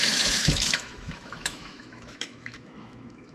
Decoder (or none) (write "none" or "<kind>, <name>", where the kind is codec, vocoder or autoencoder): autoencoder, DAC-VAE